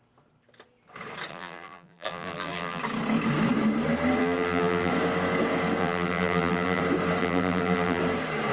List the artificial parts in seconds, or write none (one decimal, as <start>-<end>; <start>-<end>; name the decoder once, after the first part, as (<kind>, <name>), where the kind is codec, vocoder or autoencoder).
1.3-2.8 (vocoder, BigVGAN v2); 4.2-4.9; 5.8-6.8; 7.2-8.0